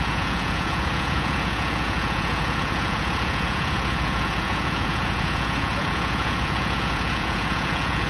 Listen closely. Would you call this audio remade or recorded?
remade